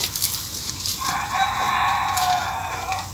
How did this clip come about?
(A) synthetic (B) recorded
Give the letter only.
B